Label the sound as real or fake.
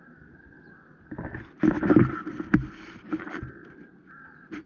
real